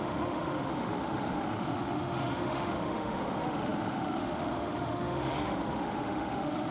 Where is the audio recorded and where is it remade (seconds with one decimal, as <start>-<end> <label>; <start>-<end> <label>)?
0.0-6.7 remade